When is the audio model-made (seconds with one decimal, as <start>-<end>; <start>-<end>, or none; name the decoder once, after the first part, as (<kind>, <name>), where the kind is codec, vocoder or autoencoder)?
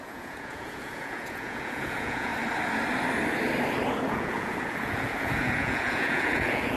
0.0-2.3 (vocoder, Vocos); 4.1-6.8